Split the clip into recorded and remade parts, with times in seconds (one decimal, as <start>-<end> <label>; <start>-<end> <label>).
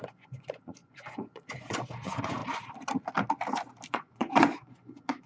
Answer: 0.0-2.4 remade; 2.4-3.9 recorded; 3.9-5.3 remade